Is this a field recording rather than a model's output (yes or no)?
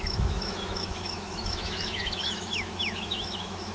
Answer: no